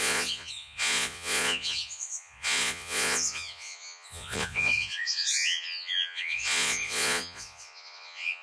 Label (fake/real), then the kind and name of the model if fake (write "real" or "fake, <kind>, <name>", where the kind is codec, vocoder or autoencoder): fake, vocoder, Vocos